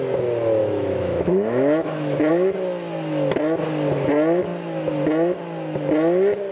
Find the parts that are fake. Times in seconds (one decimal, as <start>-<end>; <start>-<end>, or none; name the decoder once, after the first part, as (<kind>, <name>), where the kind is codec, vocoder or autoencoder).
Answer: 0.6-2.3 (autoencoder, DAC-VAE)